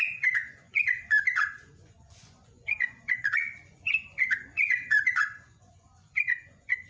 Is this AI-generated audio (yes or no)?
yes